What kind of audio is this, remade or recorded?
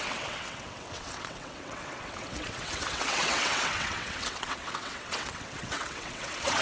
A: remade